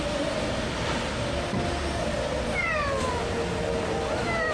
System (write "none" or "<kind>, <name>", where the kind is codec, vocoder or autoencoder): none